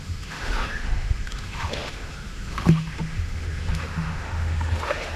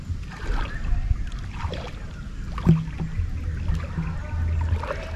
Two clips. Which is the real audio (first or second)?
second